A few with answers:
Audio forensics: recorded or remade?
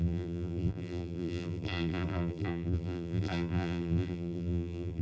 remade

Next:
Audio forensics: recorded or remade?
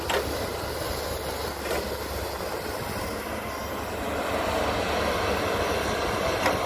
recorded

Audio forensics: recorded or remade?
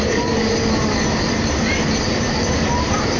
remade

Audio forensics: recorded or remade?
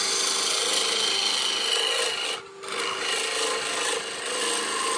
recorded